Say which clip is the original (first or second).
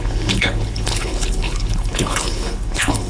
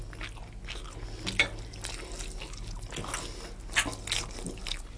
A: second